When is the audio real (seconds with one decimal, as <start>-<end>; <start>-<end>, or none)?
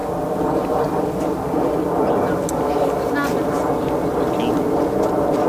0.0-5.5